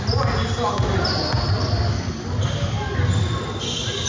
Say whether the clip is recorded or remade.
recorded